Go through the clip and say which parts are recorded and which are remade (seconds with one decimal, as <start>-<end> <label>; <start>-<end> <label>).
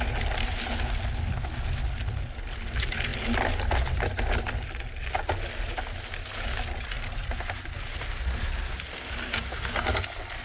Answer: 0.0-10.4 recorded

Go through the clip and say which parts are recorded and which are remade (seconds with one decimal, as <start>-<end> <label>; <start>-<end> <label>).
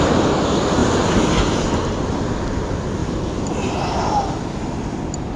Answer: 0.0-5.4 recorded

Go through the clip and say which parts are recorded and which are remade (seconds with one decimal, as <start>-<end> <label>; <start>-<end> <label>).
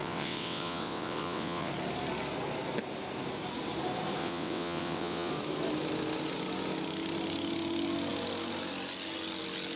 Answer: 0.0-1.7 remade; 1.7-4.2 recorded; 4.2-5.3 remade; 5.3-9.8 recorded